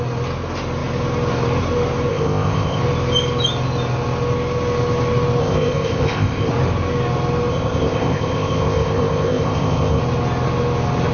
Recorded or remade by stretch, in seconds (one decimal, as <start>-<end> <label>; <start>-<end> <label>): 0.0-2.1 recorded; 2.1-2.8 remade; 2.8-5.4 recorded; 5.4-6.5 remade; 6.5-7.5 recorded; 7.5-10.0 remade; 10.0-11.1 recorded